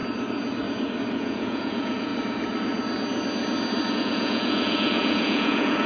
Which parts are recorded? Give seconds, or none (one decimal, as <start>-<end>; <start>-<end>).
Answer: 0.0-1.1; 2.1-3.9